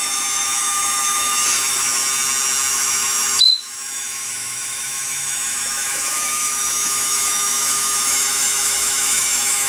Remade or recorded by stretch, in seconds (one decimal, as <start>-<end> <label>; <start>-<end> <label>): 0.0-2.0 remade; 2.0-2.7 recorded; 2.7-9.7 remade